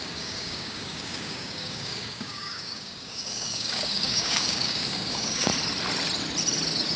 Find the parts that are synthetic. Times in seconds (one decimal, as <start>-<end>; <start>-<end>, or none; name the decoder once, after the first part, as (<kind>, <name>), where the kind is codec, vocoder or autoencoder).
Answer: 0.0-5.5 (codec, DAC)